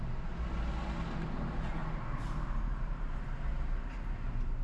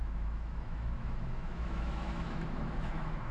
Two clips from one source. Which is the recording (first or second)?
first